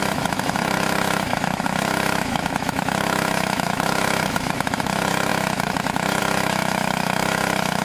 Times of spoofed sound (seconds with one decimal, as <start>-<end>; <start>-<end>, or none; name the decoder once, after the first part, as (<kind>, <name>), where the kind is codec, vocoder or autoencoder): 0.0-7.8 (autoencoder, DAC-VAE)